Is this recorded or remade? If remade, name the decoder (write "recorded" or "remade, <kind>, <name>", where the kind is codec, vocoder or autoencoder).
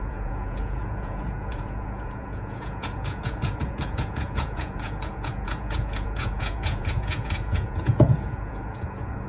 remade, vocoder, Vocos